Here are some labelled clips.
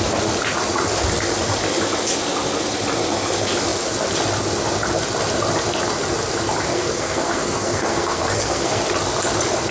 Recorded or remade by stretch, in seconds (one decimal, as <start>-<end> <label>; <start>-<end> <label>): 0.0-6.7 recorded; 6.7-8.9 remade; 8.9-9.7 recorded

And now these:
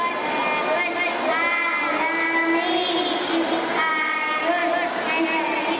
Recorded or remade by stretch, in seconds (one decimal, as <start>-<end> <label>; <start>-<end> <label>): 0.0-5.8 recorded

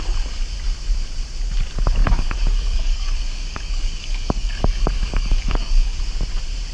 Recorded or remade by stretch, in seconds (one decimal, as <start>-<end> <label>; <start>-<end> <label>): 0.0-2.0 recorded; 2.0-6.0 remade; 6.0-6.7 recorded

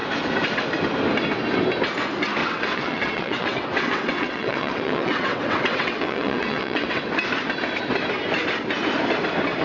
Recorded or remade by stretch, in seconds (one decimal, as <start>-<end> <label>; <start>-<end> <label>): 0.0-2.4 recorded; 2.4-7.1 remade; 7.1-9.6 recorded